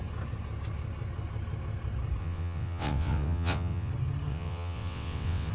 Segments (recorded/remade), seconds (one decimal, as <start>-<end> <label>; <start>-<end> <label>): 0.0-2.2 recorded; 2.2-3.9 remade; 3.9-4.3 recorded; 4.3-5.5 remade